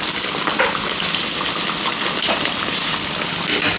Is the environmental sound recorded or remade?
recorded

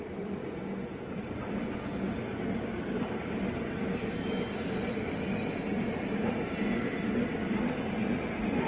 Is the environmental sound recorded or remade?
remade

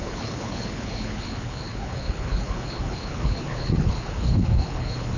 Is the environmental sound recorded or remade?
remade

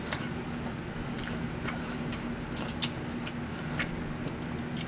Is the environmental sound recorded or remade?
recorded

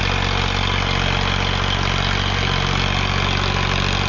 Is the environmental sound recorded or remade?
recorded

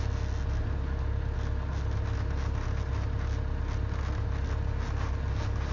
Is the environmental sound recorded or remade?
recorded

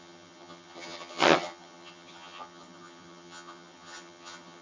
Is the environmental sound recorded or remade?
remade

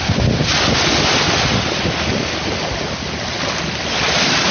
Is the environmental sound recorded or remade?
recorded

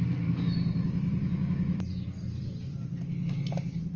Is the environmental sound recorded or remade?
recorded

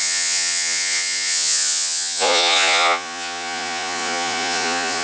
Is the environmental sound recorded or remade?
remade